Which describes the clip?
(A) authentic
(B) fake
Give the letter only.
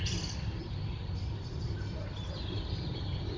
A